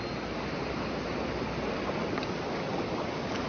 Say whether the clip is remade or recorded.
recorded